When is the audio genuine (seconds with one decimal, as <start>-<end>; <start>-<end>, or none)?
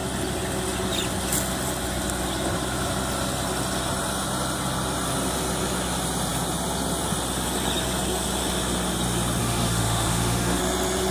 0.0-9.4; 10.6-11.1